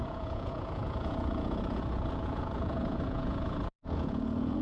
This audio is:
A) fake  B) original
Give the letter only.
A